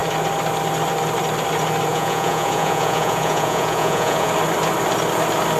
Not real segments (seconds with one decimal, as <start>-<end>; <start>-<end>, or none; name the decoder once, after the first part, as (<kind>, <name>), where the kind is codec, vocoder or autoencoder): 1.9-4.3 (vocoder, Vocos)